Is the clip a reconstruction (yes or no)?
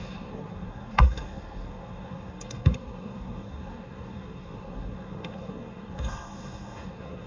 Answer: yes